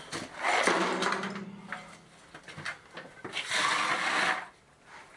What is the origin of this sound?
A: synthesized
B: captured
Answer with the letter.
B